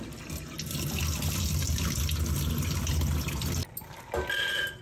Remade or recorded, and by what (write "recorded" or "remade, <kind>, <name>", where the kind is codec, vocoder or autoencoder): recorded